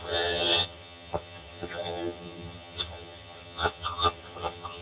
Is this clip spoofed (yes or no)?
yes